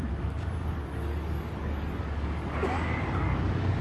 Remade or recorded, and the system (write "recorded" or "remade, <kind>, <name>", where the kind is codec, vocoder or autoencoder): remade, codec, DAC